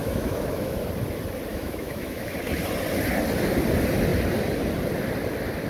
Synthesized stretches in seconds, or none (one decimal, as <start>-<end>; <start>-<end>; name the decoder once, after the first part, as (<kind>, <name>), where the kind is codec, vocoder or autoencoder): 0.0-0.8 (autoencoder, DAC-VAE); 1.5-2.4